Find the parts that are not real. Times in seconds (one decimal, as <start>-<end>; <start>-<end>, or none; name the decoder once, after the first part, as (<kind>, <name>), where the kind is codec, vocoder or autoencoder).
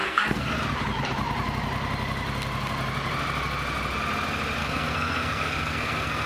0.0-0.5 (codec, SNAC); 4.6-6.3